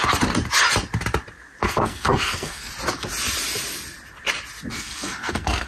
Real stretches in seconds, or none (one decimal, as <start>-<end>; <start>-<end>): 0.0-1.6; 2.7-4.7